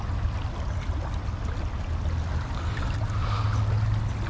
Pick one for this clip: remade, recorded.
recorded